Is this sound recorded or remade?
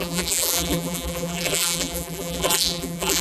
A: remade